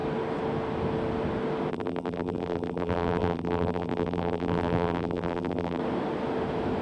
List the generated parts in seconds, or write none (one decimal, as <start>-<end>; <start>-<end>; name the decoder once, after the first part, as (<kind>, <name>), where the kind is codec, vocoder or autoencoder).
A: 1.7-5.8 (vocoder, BigVGAN v2)